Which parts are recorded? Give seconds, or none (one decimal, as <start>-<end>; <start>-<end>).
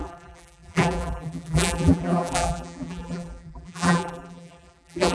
none